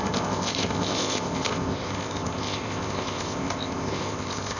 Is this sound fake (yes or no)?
yes